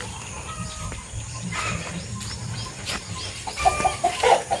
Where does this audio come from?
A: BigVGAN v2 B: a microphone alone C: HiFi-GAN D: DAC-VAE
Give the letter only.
A